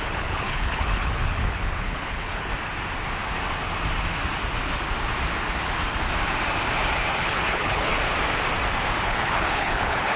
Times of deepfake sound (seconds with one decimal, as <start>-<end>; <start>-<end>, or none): 0.0-2.5; 7.2-7.9; 9.0-10.2